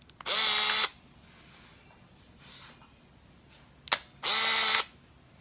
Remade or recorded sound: recorded